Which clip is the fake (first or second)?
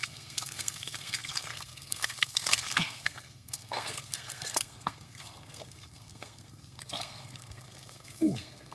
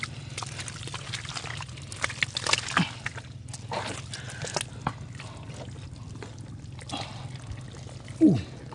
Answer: first